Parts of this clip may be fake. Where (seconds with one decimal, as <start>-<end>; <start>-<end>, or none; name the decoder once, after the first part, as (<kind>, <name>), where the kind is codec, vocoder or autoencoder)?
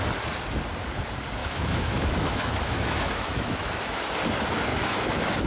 1.4-4.1 (autoencoder, DAC-VAE); 4.7-5.5